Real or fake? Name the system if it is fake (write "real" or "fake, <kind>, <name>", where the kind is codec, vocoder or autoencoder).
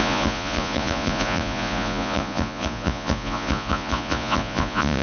fake, vocoder, Vocos